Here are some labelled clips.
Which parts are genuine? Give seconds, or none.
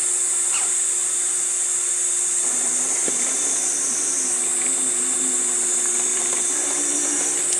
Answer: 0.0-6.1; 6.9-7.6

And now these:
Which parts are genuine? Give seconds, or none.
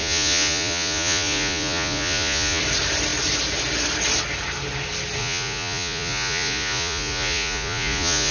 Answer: 2.6-5.2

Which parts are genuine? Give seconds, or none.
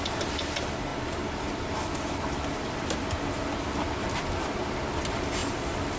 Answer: 0.0-6.0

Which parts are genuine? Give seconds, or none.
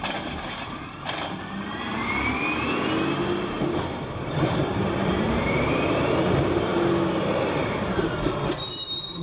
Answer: 1.9-3.9; 6.7-7.2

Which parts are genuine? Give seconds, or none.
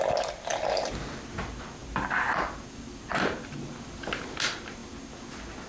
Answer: 0.0-5.7